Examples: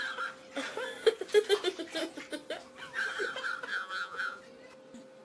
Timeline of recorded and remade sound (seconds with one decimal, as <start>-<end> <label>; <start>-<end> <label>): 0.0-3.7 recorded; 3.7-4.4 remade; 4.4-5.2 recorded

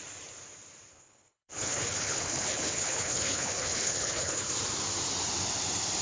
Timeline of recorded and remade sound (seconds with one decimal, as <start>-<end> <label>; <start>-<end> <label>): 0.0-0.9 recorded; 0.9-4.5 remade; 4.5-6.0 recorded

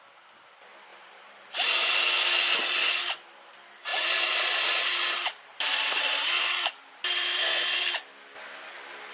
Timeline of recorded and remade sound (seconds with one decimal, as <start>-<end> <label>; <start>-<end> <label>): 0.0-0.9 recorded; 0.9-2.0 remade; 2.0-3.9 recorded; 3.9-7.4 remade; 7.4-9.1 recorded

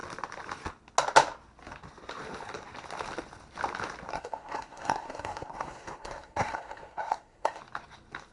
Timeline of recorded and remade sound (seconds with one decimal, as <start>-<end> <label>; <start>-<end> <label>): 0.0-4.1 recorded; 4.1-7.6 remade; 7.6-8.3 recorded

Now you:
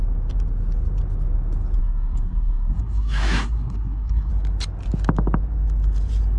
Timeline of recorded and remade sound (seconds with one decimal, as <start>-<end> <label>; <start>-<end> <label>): 0.0-1.8 recorded; 1.8-4.3 remade; 4.3-6.4 recorded

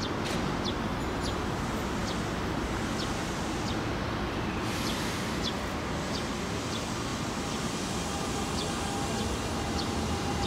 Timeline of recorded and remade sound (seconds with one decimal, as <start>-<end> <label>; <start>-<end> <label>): 0.0-10.5 recorded

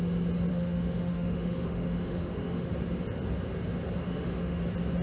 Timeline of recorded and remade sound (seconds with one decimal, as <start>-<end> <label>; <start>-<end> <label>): 0.0-0.5 recorded; 0.5-2.7 remade; 2.7-4.0 recorded; 4.0-4.6 remade; 4.6-5.0 recorded

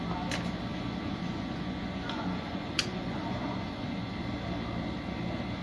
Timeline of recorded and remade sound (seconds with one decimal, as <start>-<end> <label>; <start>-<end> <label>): 0.0-0.7 recorded; 0.7-4.1 remade; 4.1-5.6 recorded